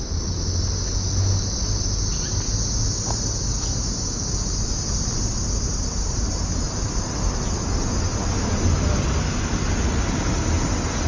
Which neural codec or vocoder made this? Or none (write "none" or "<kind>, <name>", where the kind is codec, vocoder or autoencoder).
none